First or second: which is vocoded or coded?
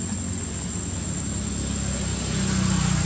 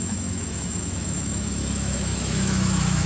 second